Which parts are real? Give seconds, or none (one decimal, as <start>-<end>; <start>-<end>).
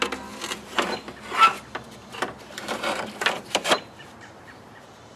0.0-2.0